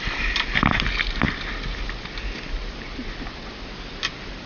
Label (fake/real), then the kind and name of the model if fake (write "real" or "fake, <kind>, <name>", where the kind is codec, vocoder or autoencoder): real